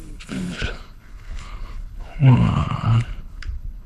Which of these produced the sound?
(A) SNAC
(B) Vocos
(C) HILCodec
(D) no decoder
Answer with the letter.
C